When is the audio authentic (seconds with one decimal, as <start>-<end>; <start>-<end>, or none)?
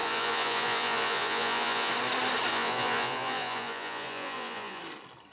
1.9-2.5; 4.8-5.3